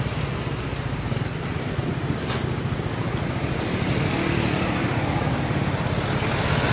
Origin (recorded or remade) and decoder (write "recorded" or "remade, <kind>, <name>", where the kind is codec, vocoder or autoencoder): recorded